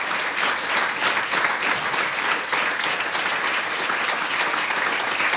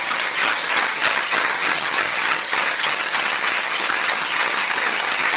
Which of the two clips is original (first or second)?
first